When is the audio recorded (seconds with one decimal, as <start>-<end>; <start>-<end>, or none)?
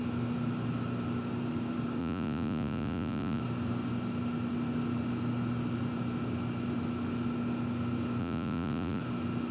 0.0-2.0; 3.4-8.2; 9.0-9.5